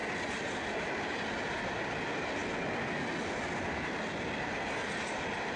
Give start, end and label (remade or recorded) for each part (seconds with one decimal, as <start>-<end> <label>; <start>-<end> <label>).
0.0-5.6 recorded